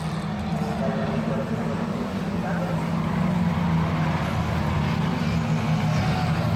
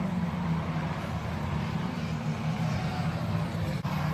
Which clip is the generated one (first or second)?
second